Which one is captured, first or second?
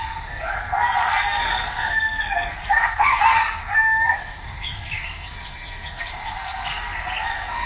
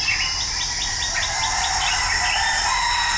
second